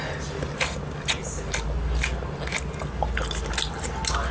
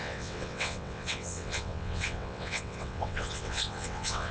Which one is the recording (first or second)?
first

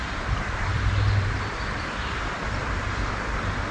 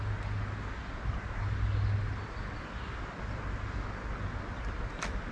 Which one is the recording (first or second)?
second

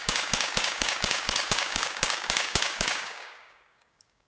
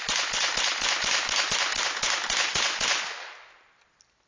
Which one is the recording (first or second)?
second